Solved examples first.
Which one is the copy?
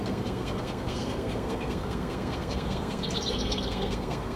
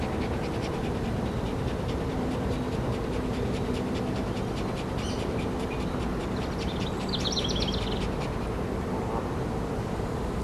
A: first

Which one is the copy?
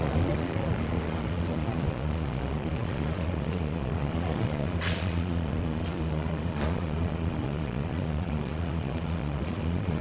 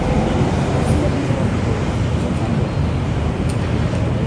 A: first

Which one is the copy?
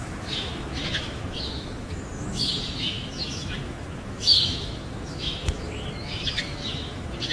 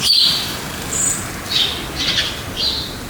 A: first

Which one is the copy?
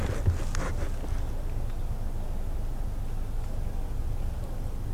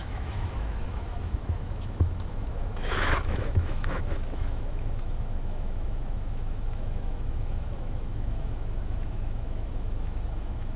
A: second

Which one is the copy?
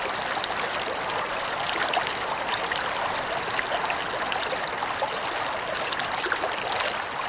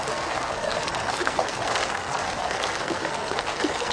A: second